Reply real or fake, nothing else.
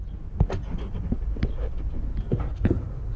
real